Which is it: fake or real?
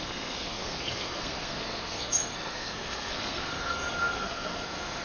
fake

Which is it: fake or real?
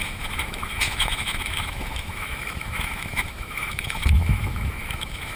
fake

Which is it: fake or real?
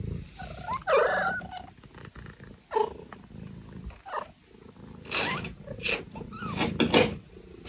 real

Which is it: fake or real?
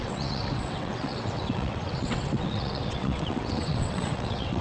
fake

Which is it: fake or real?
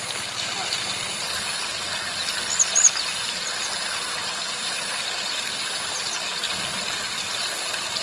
real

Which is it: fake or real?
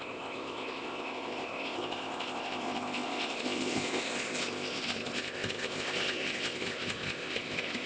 fake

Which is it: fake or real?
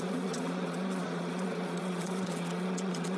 fake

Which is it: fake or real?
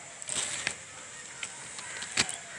real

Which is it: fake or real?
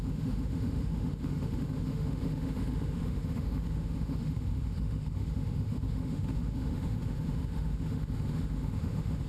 fake